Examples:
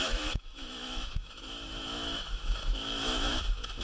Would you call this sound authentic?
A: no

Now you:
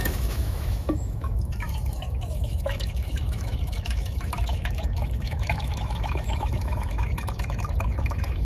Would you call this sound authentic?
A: no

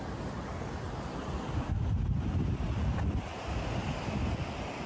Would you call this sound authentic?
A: yes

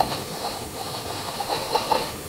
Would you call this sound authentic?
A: no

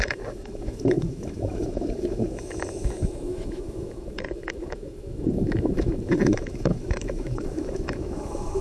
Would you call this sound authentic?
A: no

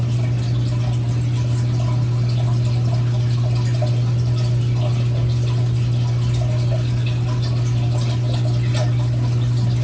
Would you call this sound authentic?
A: yes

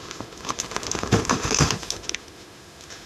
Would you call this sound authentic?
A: no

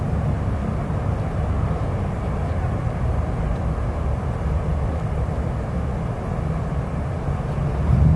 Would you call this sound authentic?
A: yes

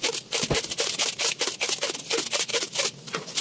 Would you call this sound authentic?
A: yes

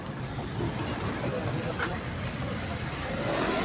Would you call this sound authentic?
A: yes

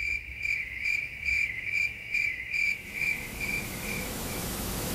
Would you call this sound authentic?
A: no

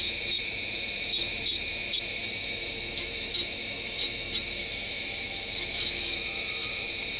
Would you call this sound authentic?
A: no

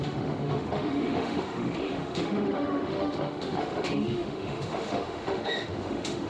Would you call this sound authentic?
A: no